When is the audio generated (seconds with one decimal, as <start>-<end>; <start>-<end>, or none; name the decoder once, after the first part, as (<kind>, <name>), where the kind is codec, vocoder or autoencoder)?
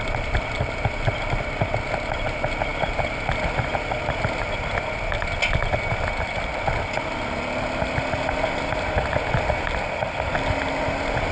none